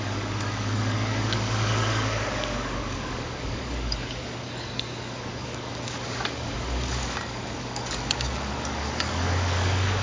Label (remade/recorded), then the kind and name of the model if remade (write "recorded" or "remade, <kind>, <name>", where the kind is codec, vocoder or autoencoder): remade, codec, DAC